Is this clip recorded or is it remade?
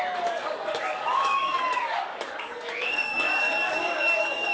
remade